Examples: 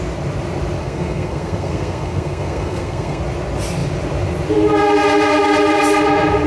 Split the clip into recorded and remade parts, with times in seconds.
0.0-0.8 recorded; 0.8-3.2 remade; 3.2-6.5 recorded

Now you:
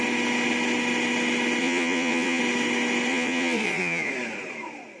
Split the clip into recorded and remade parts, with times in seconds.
0.0-1.6 recorded; 1.6-2.4 remade; 2.4-3.1 recorded; 3.1-4.1 remade; 4.1-5.0 recorded